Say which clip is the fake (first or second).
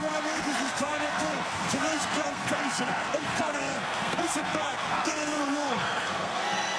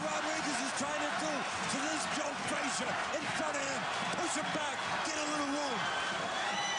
first